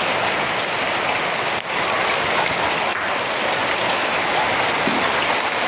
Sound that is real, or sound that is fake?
real